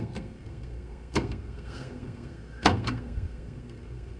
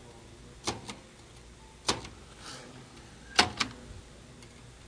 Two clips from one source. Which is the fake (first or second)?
first